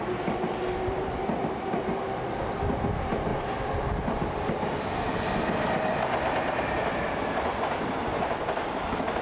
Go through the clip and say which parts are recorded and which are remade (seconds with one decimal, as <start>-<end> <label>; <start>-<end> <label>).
0.0-9.2 recorded